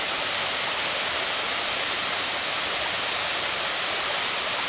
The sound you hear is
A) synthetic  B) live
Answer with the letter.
B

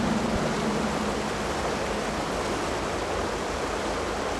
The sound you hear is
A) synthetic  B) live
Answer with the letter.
B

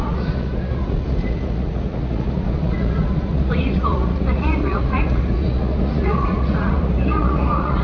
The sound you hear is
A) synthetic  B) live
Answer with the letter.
A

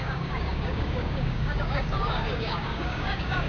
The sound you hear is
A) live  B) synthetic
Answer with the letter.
B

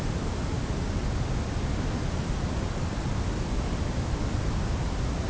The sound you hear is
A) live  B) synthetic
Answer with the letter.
A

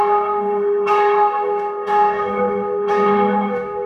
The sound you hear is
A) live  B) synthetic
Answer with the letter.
B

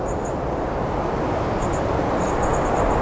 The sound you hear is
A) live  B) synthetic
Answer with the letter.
A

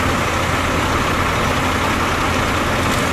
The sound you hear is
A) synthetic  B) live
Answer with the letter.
B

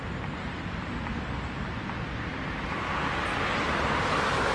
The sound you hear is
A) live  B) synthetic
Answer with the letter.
A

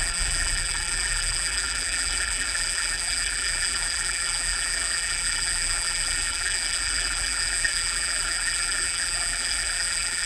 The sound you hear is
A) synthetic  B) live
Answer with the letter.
A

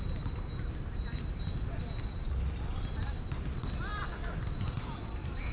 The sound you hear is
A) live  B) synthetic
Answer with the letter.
A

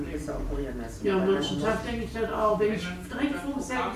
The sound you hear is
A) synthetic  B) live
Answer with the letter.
B